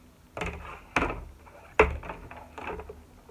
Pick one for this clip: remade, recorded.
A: recorded